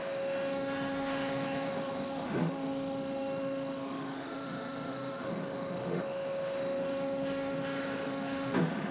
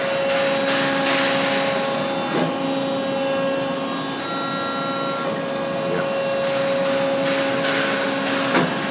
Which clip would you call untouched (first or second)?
second